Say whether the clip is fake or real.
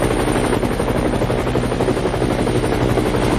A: real